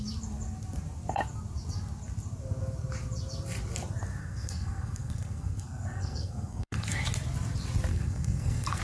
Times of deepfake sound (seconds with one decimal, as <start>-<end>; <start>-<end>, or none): 4.2-7.0; 7.9-8.8